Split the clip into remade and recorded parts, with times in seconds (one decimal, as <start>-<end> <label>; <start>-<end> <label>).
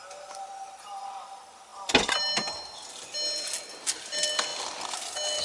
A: 0.0-5.4 recorded